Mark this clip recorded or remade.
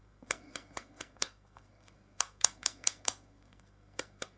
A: remade